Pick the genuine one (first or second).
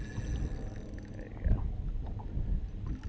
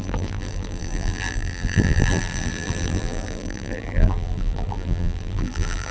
first